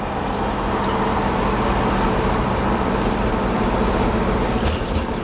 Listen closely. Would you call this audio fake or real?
real